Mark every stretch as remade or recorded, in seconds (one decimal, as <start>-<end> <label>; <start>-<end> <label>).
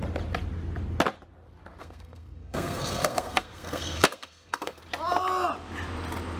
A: 0.0-1.8 recorded; 1.8-4.8 remade; 4.8-6.4 recorded